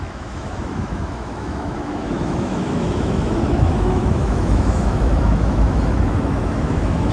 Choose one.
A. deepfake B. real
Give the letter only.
A